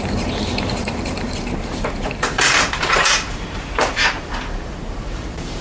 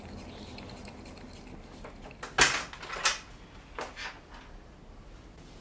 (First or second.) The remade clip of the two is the first